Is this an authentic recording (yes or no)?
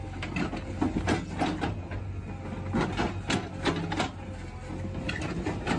yes